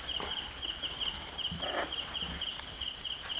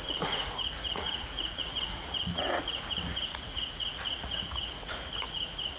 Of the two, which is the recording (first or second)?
first